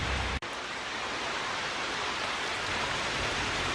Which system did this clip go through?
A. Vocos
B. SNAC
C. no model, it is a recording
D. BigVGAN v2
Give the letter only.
D